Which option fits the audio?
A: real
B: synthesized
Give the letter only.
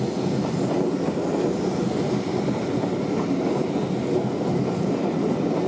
A